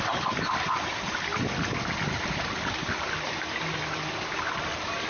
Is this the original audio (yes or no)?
yes